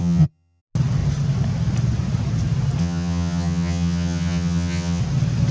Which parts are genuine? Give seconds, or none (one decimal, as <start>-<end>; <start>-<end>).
0.6-2.8; 5.0-5.5